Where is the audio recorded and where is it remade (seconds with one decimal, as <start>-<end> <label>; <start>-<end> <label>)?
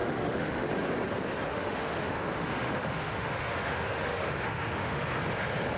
0.0-0.7 remade; 0.7-1.5 recorded; 1.5-5.0 remade; 5.0-5.8 recorded